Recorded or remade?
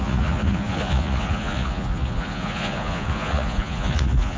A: remade